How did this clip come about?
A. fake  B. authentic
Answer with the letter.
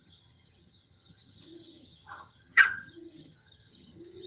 A